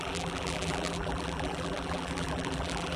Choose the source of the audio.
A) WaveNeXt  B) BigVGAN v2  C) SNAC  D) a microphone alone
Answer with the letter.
B